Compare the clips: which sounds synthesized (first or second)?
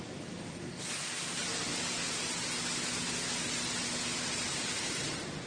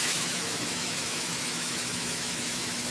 second